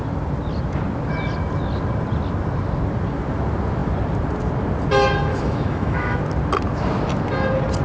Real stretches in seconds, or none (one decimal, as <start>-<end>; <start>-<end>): 0.0-5.3; 6.2-7.8